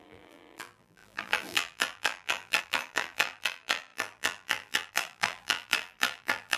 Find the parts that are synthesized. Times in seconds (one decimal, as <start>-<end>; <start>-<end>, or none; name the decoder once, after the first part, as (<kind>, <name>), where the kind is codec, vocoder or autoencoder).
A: 0.0-6.6 (vocoder, BigVGAN v2)